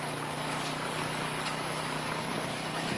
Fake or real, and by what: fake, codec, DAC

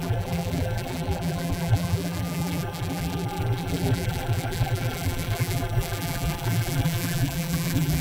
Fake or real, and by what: fake, vocoder, BigVGAN v2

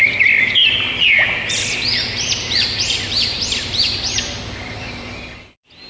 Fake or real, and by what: fake, vocoder, BigVGAN v2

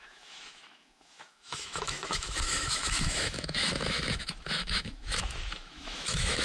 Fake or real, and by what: fake, autoencoder, DAC-VAE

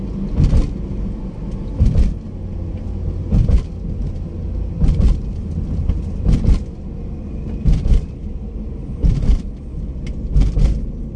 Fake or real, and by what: real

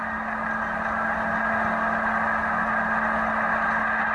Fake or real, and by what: real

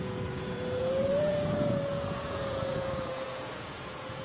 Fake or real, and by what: fake, vocoder, Vocos